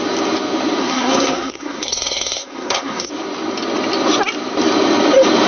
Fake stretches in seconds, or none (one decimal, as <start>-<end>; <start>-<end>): 0.8-3.1